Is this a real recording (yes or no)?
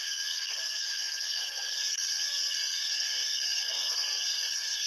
no